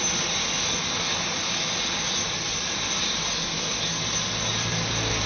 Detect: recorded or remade recorded